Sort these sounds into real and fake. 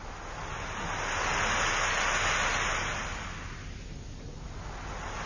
real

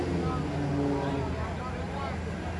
real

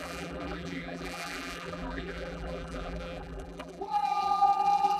fake